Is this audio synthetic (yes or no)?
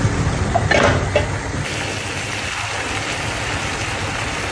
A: no